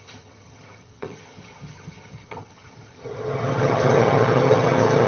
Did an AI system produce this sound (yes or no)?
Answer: yes